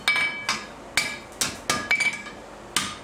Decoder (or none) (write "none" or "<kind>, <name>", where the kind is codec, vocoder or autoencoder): none